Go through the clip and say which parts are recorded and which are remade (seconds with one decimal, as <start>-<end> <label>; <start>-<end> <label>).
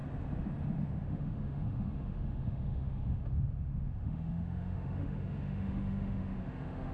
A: 0.0-0.9 recorded; 0.9-6.9 remade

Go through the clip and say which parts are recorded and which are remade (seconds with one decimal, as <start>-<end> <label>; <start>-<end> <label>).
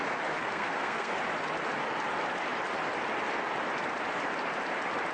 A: 0.0-0.4 recorded; 0.4-1.1 remade; 1.1-5.1 recorded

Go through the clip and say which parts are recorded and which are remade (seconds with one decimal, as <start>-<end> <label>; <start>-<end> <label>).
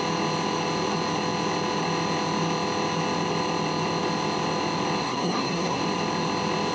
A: 0.0-5.0 recorded; 5.0-5.8 remade; 5.8-6.7 recorded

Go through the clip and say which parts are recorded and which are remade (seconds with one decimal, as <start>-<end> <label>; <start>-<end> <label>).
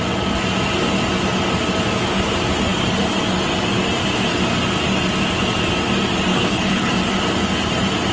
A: 0.0-6.3 recorded; 6.3-6.9 remade; 6.9-8.1 recorded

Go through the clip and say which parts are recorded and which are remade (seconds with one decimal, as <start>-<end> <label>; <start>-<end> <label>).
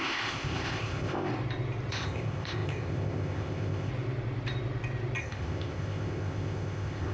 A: 0.0-1.3 remade; 1.3-1.9 recorded; 1.9-3.9 remade; 3.9-5.2 recorded; 5.2-7.1 remade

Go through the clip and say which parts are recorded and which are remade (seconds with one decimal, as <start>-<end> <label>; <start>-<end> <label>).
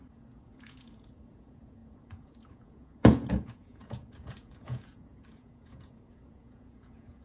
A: 0.0-7.2 remade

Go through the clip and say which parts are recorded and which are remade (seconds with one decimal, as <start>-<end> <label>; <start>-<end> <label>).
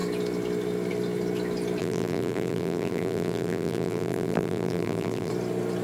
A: 0.0-1.8 recorded; 1.8-5.3 remade; 5.3-5.8 recorded